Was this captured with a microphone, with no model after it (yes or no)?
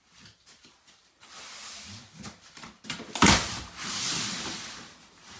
no